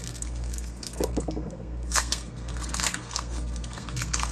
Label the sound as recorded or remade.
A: remade